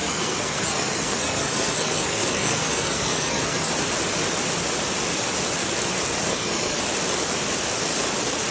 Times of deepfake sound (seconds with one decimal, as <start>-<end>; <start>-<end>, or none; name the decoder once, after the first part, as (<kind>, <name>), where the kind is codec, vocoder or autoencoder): 0.0-3.7 (codec, SNAC); 6.3-6.8